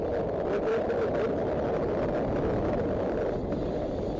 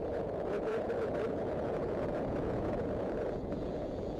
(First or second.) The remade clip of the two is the second